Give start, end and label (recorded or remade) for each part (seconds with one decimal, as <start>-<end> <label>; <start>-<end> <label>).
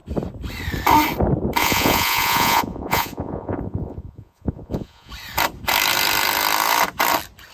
0.0-1.6 recorded; 1.6-5.1 remade; 5.1-7.5 recorded